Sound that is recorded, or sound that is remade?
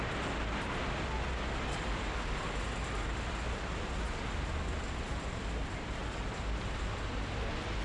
recorded